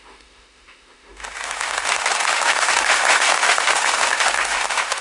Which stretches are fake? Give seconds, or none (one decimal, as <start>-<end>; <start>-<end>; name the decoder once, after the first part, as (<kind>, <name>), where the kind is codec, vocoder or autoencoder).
0.0-5.0 (autoencoder, DAC-VAE)